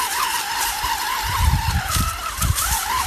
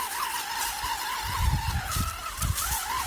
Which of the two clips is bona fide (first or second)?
second